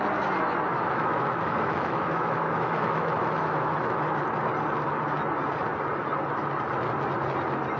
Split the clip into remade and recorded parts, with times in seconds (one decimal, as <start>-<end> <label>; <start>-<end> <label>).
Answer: 0.0-0.7 recorded; 0.7-4.2 remade; 4.2-7.8 recorded